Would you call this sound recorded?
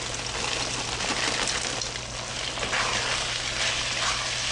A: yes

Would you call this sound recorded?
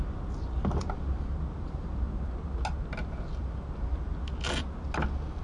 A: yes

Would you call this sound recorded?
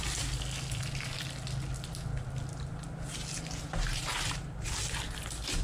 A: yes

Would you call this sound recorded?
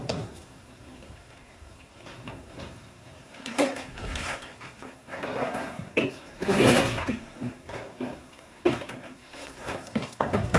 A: no